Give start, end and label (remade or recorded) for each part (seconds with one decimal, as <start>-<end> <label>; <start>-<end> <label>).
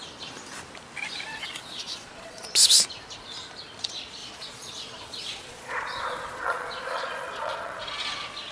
0.0-1.3 recorded; 1.3-2.4 remade; 2.4-4.2 recorded; 4.2-7.8 remade; 7.8-8.5 recorded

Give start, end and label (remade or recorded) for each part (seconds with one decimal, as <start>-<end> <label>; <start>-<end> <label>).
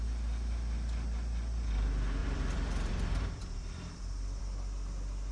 0.0-2.2 recorded; 2.2-4.4 remade; 4.4-5.3 recorded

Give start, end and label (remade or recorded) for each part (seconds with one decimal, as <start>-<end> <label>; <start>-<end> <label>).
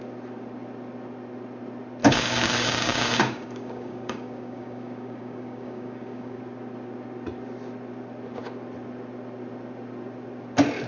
0.0-2.0 recorded; 2.0-6.4 remade; 6.4-10.9 recorded